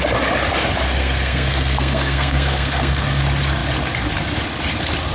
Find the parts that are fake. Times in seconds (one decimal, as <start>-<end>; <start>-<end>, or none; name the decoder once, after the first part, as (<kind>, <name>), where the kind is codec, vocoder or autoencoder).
1.0-3.2 (codec, SNAC)

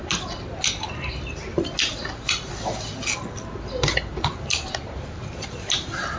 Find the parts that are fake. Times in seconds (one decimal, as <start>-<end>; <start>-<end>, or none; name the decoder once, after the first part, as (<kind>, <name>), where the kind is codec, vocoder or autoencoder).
none

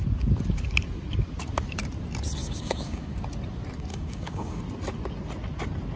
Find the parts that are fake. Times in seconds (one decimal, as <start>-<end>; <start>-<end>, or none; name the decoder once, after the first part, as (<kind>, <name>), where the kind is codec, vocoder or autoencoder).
2.4-3.2 (codec, DAC); 3.9-4.6

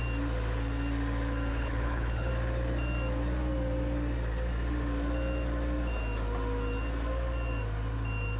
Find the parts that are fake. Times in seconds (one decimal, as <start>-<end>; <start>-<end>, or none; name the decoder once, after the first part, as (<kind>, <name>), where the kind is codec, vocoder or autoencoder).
1.5-2.3 (codec, HILCodec)

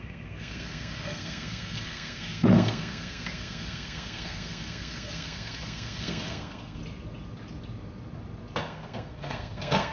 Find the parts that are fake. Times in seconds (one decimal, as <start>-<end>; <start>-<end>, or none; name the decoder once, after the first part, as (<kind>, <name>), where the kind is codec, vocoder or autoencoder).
0.0-6.8 (codec, SNAC); 8.6-9.9

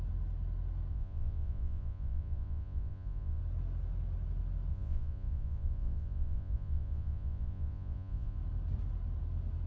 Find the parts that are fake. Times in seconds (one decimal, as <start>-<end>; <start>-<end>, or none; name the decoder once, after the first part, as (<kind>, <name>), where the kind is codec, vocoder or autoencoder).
0.9-3.4 (vocoder, Vocos); 4.7-8.4

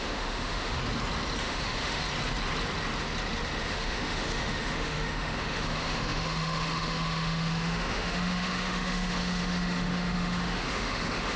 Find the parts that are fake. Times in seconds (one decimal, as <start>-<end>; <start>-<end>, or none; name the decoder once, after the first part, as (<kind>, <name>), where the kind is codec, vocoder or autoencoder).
0.0-0.8 (autoencoder, DAC-VAE); 1.4-2.0; 3.6-11.4

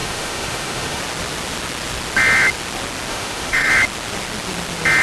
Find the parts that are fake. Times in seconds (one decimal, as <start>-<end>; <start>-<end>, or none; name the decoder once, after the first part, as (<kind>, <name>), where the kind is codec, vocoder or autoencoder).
0.0-1.0 (autoencoder, DAC-VAE); 3.1-3.7